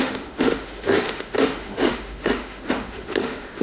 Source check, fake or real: fake